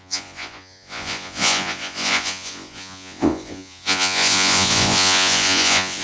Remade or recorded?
remade